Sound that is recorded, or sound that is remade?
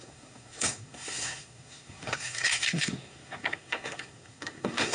remade